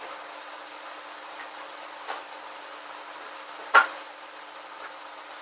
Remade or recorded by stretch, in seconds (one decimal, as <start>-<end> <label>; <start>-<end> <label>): 0.0-0.7 recorded; 0.7-3.0 remade; 3.0-5.4 recorded

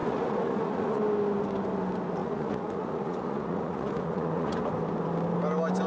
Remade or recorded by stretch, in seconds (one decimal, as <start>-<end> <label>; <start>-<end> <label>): 0.0-1.0 remade; 1.0-2.2 recorded; 2.2-4.7 remade; 4.7-5.9 recorded

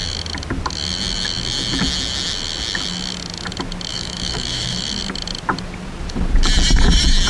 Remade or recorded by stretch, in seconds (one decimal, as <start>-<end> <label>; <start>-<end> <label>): 0.0-3.9 recorded; 3.9-4.9 remade; 4.9-7.3 recorded

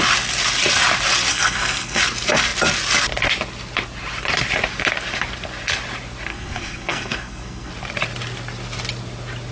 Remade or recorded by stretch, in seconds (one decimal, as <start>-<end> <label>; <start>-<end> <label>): 0.0-1.3 recorded; 1.3-2.0 remade; 2.0-6.3 recorded; 6.3-7.7 remade; 7.7-9.5 recorded

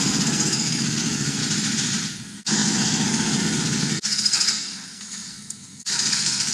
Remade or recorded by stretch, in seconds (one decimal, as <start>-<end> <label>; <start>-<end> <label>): 0.0-1.4 remade; 1.4-2.1 recorded; 2.1-6.5 remade

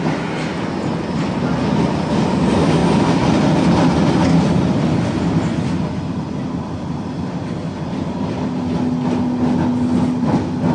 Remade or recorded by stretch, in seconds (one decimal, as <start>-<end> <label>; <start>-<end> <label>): 0.0-10.7 recorded